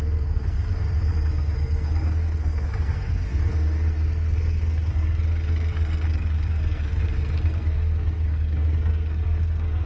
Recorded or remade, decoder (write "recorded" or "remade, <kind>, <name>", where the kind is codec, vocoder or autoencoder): remade, codec, SNAC